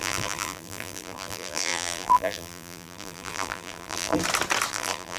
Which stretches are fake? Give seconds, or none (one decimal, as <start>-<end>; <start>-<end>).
0.0-4.2; 4.7-5.2